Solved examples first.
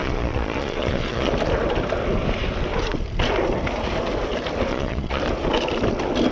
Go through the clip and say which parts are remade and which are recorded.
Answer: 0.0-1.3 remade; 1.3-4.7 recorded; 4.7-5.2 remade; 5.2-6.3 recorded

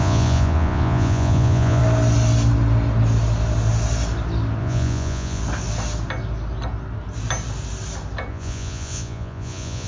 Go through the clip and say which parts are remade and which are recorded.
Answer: 0.0-1.8 remade; 1.8-4.6 recorded; 4.6-5.4 remade; 5.4-8.3 recorded; 8.3-9.9 remade